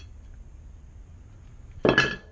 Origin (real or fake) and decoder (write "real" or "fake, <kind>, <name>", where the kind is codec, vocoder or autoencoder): real